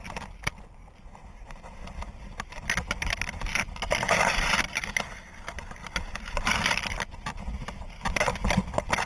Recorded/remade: recorded